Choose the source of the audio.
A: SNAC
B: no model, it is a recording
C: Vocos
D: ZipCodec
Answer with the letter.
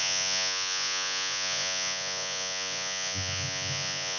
C